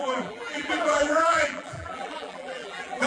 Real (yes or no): no